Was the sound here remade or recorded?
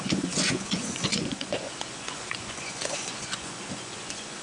remade